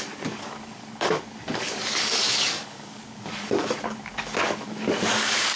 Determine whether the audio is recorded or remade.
remade